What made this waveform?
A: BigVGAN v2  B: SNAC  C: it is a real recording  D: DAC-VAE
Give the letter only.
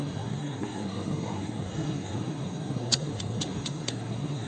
B